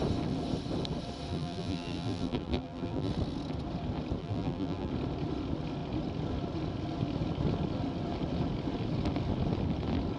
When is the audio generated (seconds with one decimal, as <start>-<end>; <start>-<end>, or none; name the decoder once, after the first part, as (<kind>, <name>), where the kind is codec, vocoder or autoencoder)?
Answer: 1.3-3.1 (vocoder, BigVGAN v2); 4.2-4.9